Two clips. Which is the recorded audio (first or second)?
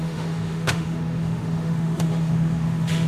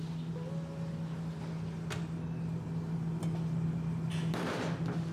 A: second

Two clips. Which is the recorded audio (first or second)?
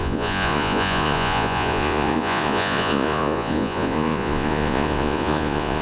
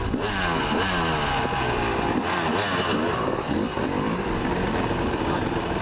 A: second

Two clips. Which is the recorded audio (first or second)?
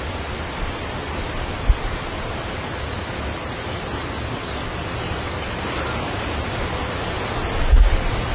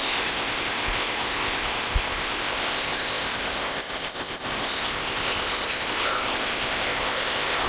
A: first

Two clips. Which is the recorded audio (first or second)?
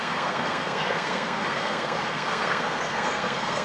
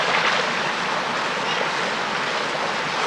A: second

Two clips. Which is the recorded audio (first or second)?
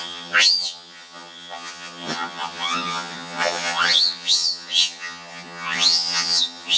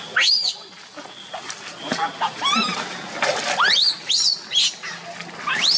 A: second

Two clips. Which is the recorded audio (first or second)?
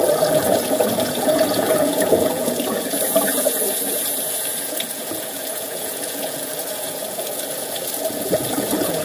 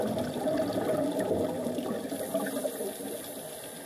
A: second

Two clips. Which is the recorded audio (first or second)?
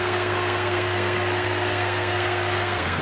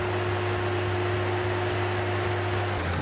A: second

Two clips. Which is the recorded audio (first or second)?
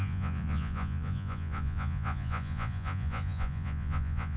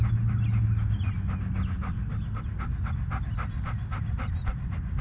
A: second